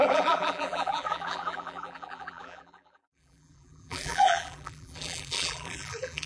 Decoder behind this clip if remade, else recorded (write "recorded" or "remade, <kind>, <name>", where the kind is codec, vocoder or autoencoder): remade, vocoder, BigVGAN v2